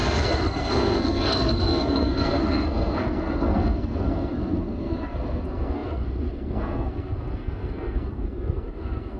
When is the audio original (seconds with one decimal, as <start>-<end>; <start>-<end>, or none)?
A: none